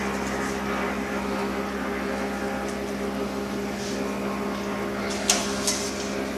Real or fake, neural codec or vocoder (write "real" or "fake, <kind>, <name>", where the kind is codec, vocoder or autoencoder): real